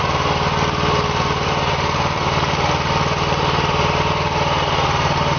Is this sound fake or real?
fake